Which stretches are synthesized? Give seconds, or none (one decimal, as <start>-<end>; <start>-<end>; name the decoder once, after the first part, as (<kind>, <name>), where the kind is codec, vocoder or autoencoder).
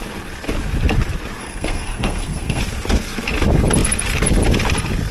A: 1.4-2.6 (codec, SNAC)